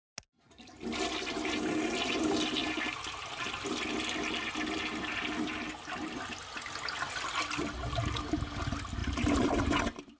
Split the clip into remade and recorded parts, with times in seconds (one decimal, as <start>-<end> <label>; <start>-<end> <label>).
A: 0.0-10.2 recorded